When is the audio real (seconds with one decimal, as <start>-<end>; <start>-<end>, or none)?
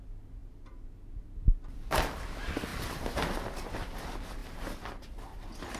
0.0-5.8